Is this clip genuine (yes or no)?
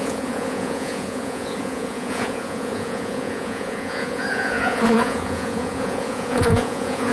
no